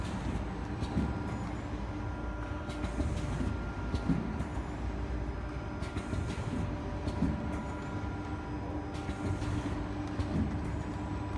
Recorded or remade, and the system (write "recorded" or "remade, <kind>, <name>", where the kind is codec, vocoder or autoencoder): recorded